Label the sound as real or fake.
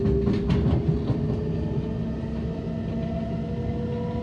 real